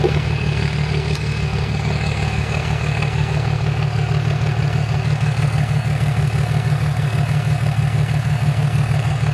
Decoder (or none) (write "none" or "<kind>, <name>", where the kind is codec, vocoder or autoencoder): codec, SNAC